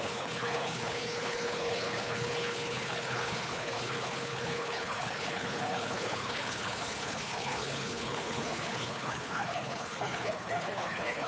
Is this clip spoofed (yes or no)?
yes